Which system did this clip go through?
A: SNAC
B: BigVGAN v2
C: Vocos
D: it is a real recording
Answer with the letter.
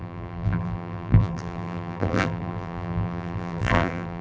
B